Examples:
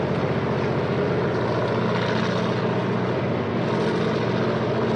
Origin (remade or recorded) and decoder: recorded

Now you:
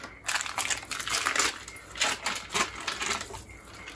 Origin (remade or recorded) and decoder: recorded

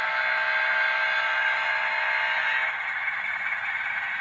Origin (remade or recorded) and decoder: recorded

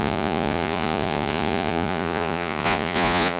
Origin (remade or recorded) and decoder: remade, vocoder, Vocos